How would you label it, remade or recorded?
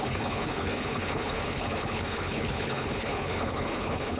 remade